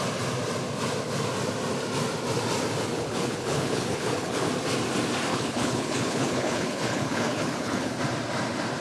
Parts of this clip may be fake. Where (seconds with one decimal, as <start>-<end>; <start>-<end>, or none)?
2.9-4.5; 5.3-8.0